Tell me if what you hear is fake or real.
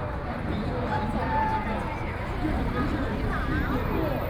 real